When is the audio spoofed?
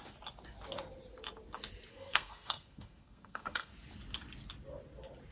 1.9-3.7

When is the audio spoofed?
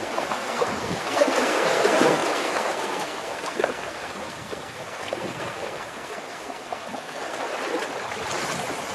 0.0-7.5